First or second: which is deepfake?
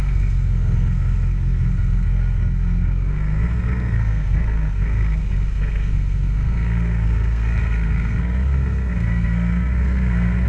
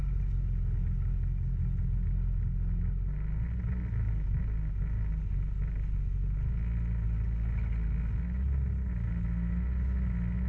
first